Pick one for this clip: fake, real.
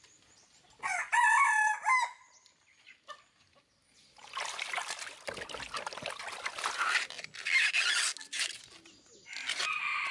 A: real